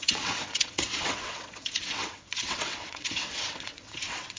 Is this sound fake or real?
fake